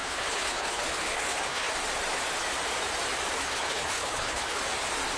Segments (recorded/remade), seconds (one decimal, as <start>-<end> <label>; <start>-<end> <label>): 0.0-1.7 remade; 1.7-3.4 recorded; 3.4-4.6 remade; 4.6-5.2 recorded